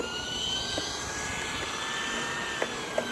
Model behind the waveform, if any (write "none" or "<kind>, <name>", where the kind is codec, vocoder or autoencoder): none